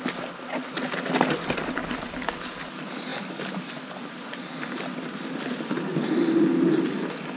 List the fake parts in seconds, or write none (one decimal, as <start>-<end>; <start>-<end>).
1.8-2.3